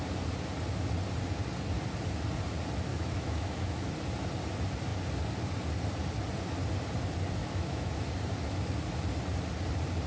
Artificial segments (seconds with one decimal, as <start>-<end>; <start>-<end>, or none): 2.9-3.9; 7.4-7.9